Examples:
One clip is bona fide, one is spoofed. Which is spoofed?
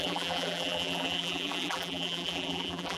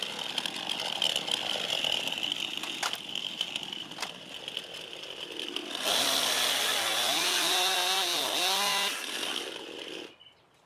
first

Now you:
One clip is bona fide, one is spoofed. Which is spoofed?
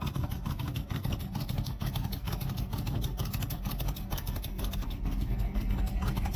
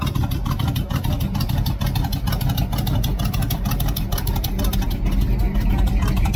first